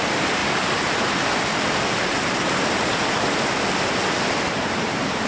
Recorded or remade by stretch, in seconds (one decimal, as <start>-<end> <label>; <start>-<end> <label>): 0.0-5.3 recorded